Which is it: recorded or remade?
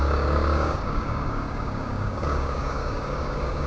remade